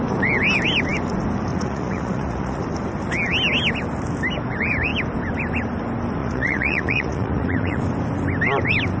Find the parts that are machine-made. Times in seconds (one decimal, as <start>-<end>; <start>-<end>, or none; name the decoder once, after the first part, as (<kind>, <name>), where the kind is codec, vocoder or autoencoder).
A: 1.5-2.6 (vocoder, Vocos); 6.2-7.8